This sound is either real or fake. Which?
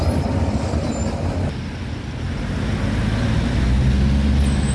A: real